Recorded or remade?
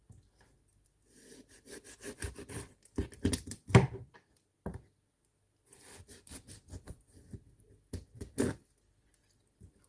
recorded